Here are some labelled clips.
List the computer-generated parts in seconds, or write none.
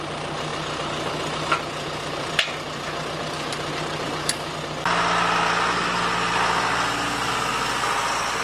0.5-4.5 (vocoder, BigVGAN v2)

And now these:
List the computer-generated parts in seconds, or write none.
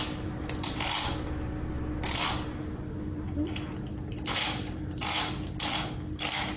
none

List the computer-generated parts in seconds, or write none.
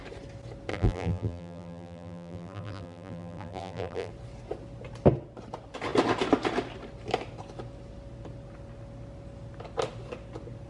0.7-4.1 (vocoder, BigVGAN v2)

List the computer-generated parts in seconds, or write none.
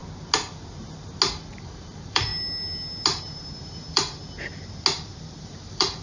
1.5-2.3 (vocoder, BigVGAN v2); 3.2-4.2; 5.4-6.0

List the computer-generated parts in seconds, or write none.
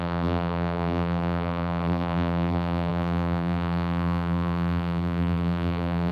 0.0-6.1 (vocoder, BigVGAN v2)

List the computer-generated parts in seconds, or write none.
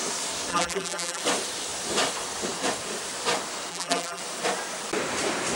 0.5-1.2 (vocoder, BigVGAN v2); 3.7-4.2